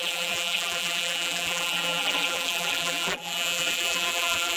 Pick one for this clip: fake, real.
fake